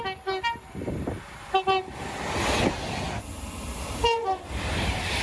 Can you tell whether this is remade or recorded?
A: recorded